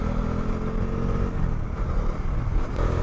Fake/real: real